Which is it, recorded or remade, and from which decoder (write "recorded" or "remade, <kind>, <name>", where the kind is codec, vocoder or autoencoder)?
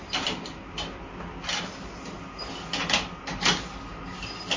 recorded